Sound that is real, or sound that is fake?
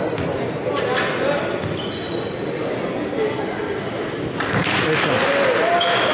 real